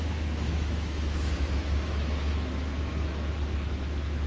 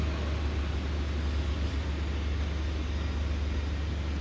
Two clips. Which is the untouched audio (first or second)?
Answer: second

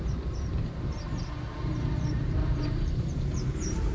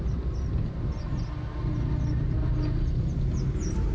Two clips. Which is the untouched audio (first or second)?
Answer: second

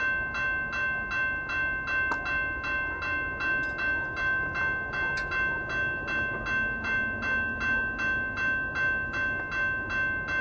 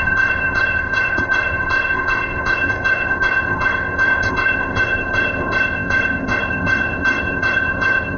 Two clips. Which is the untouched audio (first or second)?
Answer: first